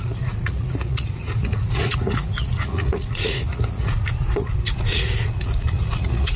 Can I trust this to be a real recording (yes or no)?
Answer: no